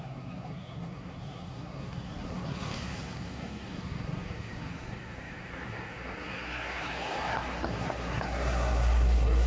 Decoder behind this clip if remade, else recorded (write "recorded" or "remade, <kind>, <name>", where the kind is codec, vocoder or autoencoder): remade, codec, SNAC